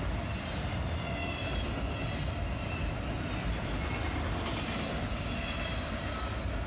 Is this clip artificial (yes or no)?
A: no